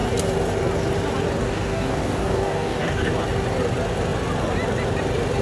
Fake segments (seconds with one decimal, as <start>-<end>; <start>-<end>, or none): 1.4-3.1